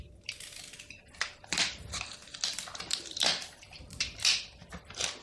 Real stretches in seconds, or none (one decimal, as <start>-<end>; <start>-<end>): 0.0-2.2; 2.9-5.2